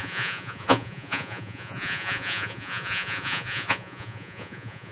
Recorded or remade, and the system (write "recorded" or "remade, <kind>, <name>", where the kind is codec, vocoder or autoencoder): remade, vocoder, Vocos